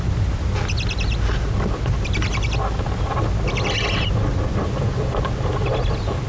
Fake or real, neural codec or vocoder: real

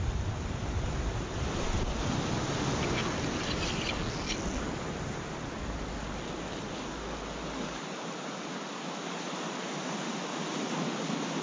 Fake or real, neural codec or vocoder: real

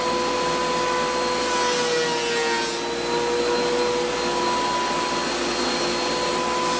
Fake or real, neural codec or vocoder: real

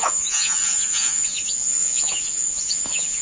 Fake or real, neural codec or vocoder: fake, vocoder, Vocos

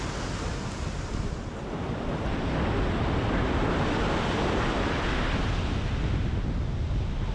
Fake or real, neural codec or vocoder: real